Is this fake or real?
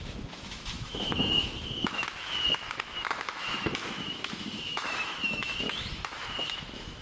fake